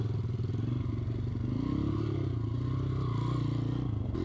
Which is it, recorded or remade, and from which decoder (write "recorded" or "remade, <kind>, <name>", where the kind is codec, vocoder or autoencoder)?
recorded